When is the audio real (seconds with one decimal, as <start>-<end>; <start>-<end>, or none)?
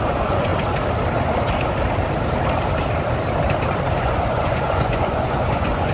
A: 0.5-4.0